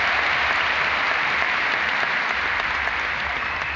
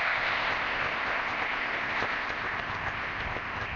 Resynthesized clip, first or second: second